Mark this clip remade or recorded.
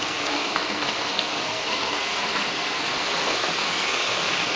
remade